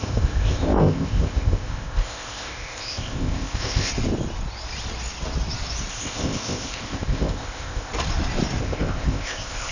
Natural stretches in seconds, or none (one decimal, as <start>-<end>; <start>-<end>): 3.9-5.9; 7.9-8.6